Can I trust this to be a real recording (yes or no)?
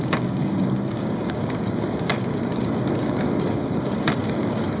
no